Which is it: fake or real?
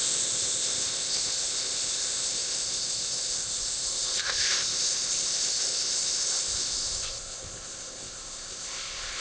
fake